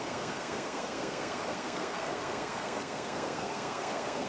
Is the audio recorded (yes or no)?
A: no